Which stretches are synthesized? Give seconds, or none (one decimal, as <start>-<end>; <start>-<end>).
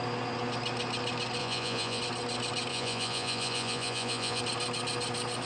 1.4-2.0; 2.7-4.4